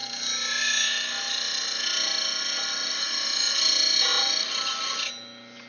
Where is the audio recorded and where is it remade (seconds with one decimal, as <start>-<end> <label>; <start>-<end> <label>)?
0.0-5.7 recorded